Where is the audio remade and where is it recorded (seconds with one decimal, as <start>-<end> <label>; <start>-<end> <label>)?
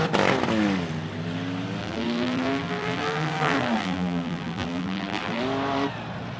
0.0-1.8 recorded; 1.8-5.4 remade; 5.4-6.4 recorded